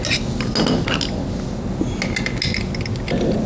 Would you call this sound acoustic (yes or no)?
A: yes